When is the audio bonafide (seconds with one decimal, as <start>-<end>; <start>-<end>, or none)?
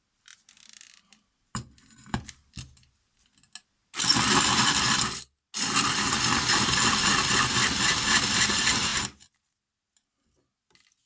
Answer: 0.0-11.1